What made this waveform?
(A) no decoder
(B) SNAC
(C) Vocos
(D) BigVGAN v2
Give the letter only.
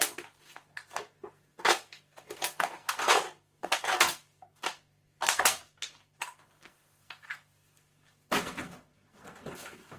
B